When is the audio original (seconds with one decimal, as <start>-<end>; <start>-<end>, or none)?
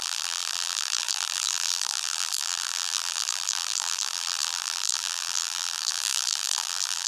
none